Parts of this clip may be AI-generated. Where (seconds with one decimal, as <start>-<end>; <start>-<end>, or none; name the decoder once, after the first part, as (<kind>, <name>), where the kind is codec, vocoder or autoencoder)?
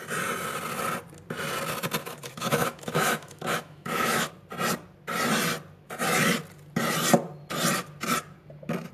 2.0-4.3 (autoencoder, DAC-VAE)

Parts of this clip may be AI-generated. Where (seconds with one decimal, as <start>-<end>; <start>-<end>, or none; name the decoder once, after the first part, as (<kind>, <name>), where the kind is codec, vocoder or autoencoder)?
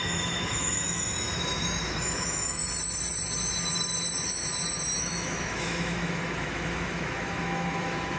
0.0-2.6 (autoencoder, DAC-VAE); 5.0-8.2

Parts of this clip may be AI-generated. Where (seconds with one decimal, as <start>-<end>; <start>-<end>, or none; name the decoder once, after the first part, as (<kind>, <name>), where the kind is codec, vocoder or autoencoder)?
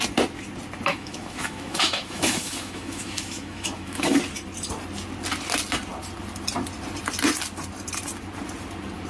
0.9-4.2 (autoencoder, DAC-VAE)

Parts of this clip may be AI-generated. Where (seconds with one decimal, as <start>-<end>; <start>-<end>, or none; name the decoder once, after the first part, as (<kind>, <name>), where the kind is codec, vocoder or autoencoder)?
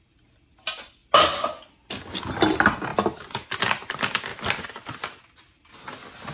none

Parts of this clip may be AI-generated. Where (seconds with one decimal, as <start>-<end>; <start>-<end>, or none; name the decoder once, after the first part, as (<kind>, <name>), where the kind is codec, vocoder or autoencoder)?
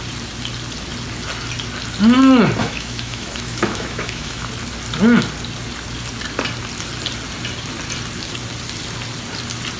2.6-4.5 (autoencoder, DAC-VAE)